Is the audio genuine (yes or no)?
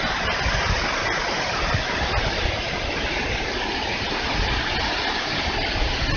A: yes